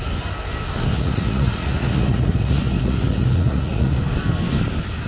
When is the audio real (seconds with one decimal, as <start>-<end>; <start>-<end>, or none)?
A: 0.0-0.9; 4.0-5.1